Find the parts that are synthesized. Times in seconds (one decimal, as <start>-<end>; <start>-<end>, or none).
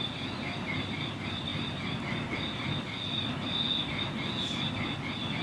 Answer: none